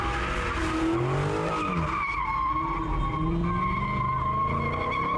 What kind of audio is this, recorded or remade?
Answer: recorded